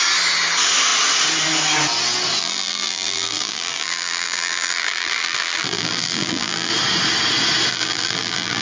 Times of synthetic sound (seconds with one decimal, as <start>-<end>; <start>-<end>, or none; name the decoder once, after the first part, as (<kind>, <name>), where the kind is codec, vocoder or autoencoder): 2.4-6.7 (vocoder, BigVGAN v2); 7.7-8.6